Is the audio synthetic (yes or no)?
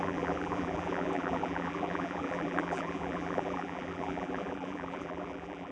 yes